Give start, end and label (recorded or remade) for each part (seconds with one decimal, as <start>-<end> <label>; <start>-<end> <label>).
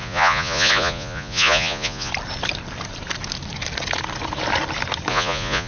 0.0-2.1 remade; 2.1-5.1 recorded; 5.1-5.7 remade